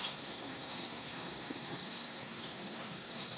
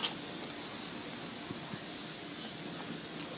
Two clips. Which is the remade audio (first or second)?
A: first